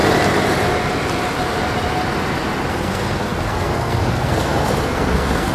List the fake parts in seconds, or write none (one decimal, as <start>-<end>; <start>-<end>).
2.7-5.5